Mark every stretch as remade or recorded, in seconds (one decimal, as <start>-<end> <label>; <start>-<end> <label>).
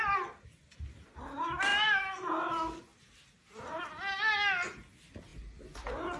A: 0.0-6.2 recorded